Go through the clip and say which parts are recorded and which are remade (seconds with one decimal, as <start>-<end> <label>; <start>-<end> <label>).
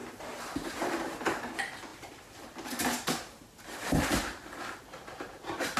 0.0-5.8 recorded